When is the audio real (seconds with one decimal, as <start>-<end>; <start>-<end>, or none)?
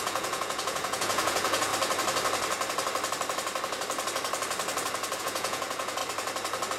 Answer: 1.7-5.2; 6.0-6.8